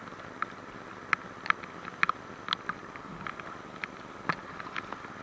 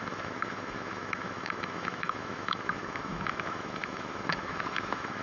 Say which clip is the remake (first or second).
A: second